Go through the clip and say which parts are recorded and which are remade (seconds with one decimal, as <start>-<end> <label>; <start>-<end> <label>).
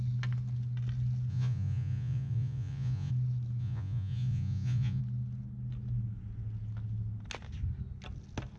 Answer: 0.0-1.3 recorded; 1.3-3.1 remade; 3.1-3.6 recorded; 3.6-5.0 remade; 5.0-8.6 recorded